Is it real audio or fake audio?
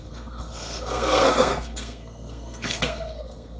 fake